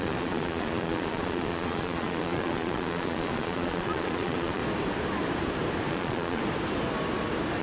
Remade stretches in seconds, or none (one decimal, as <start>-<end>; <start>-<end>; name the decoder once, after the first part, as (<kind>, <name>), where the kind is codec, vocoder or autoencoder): 0.0-4.6 (vocoder, Vocos); 5.9-6.4